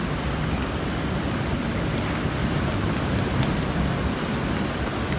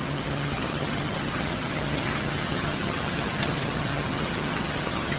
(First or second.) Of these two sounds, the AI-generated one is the second